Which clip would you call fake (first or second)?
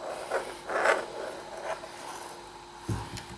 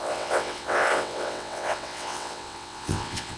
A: second